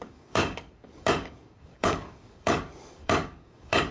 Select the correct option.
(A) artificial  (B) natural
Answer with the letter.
A